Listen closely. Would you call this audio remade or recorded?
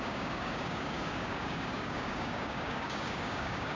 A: remade